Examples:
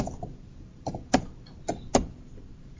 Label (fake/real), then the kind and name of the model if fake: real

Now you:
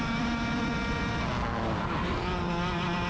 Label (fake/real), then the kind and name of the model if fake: real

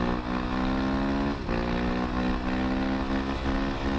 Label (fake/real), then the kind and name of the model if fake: real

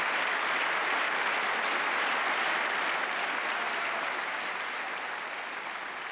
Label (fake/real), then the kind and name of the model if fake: real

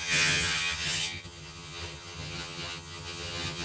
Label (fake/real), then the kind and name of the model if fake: fake, vocoder, HiFi-GAN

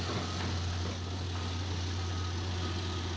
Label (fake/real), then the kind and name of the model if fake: real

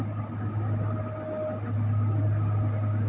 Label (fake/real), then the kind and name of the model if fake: real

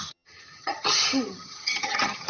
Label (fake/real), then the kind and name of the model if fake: fake, vocoder, HiFi-GAN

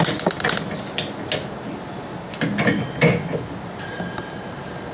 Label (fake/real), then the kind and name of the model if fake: real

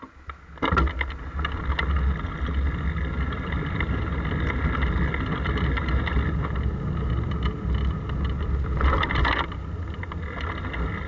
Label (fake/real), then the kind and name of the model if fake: real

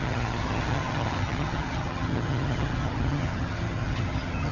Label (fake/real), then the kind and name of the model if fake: fake, vocoder, HiFi-GAN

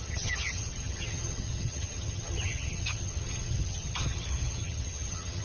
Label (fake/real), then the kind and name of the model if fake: fake, vocoder, HiFi-GAN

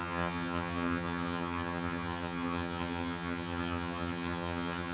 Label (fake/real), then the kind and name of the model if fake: fake, vocoder, HiFi-GAN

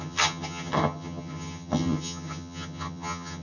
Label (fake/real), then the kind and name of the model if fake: fake, vocoder, HiFi-GAN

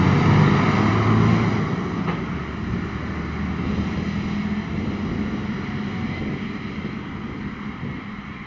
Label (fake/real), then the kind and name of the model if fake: real